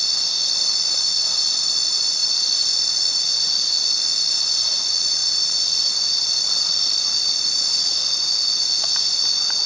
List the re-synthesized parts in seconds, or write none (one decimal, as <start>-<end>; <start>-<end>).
0.0-5.2; 6.4-7.9